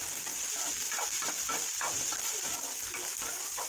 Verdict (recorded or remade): remade